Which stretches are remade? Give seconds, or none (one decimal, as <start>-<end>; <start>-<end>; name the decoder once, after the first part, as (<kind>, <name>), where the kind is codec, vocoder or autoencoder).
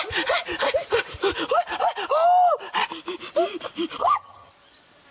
4.0-4.5 (vocoder, HiFi-GAN)